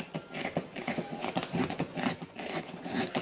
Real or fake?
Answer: fake